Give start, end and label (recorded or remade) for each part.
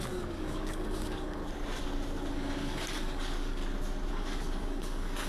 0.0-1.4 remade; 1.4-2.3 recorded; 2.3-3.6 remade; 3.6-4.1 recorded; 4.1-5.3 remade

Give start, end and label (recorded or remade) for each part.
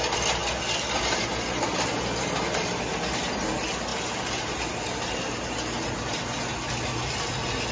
0.0-7.7 recorded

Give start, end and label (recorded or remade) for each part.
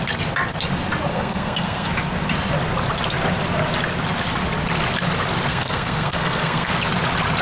0.0-1.1 recorded; 1.1-1.9 remade; 1.9-5.5 recorded; 5.5-6.7 remade; 6.7-7.4 recorded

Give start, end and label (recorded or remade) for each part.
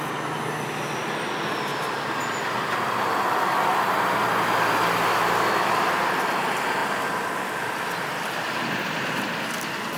0.0-1.7 recorded; 1.7-3.2 remade; 3.2-6.8 recorded; 6.8-9.2 remade; 9.2-10.0 recorded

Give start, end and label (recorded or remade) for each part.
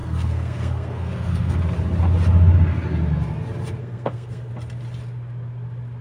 0.0-1.6 remade; 1.6-3.8 recorded; 3.8-4.5 remade; 4.5-6.0 recorded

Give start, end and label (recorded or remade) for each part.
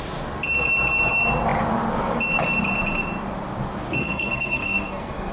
0.0-4.0 recorded; 4.0-5.3 remade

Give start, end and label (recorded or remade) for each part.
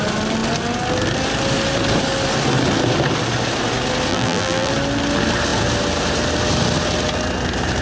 0.0-4.1 recorded; 4.1-4.7 remade; 4.7-7.8 recorded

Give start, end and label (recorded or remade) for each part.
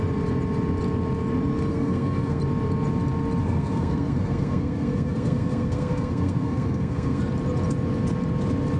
0.0-1.7 recorded; 1.7-2.4 remade; 2.4-3.4 recorded; 3.4-7.2 remade; 7.2-8.8 recorded